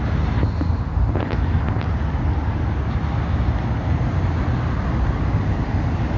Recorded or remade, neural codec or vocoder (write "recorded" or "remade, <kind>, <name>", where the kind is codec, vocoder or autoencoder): recorded